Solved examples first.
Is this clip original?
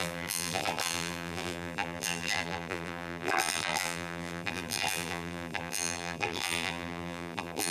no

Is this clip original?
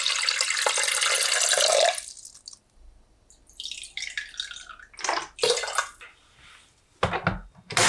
yes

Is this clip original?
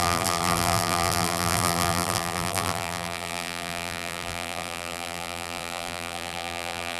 no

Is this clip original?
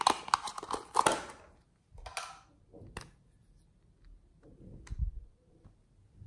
yes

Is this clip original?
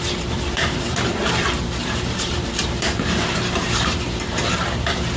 no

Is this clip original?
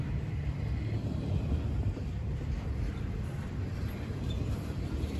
no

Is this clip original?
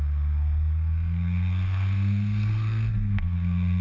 no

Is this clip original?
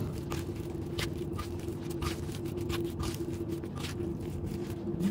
yes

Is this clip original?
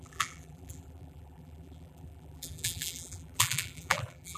no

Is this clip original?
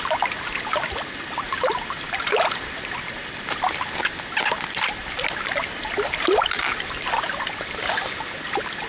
yes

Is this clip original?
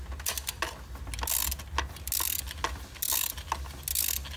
yes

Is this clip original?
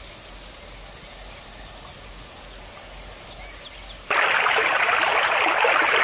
yes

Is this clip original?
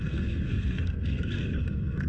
no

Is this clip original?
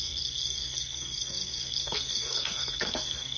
no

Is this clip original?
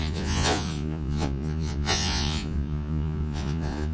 no